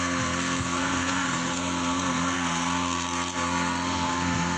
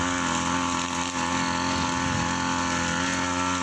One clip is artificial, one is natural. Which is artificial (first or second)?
first